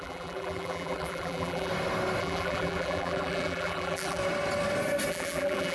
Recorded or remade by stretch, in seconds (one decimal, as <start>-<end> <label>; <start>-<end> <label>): 0.0-1.7 remade; 1.7-2.2 recorded; 2.2-4.2 remade; 4.2-5.1 recorded; 5.1-5.7 remade